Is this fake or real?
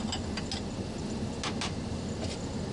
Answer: real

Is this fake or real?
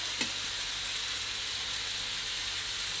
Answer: real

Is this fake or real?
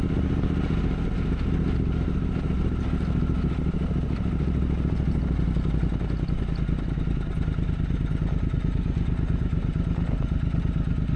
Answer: real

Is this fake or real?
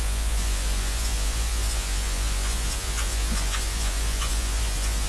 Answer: fake